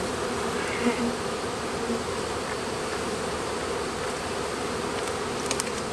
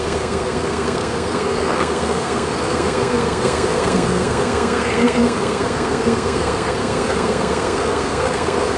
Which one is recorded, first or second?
first